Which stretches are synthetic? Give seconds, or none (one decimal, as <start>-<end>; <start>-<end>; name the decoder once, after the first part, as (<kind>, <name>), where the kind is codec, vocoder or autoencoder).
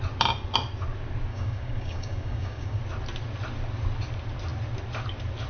1.3-2.8 (codec, DAC)